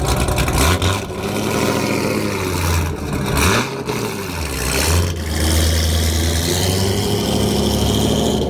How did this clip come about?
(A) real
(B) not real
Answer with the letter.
A